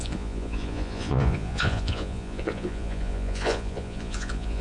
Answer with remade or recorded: remade